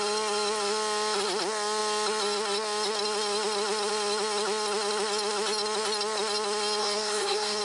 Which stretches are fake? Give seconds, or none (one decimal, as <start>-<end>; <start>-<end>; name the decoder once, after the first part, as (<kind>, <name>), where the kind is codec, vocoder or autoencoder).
6.8-7.6 (codec, SNAC)